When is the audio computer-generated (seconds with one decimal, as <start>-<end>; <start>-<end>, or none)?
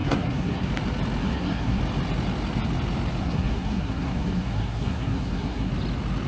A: 0.0-0.7; 1.2-1.8; 3.2-5.7